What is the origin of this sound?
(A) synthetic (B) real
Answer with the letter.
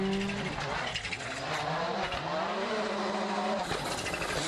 B